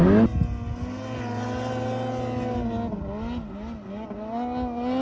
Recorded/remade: recorded